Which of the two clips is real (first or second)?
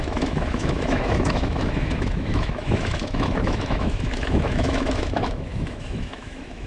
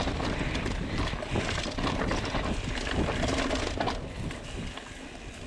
second